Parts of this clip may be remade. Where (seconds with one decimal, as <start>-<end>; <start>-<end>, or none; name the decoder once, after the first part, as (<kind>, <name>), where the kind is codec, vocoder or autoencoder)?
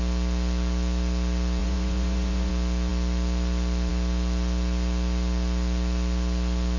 1.6-2.5 (vocoder, Vocos)